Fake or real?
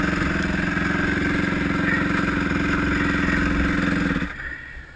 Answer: real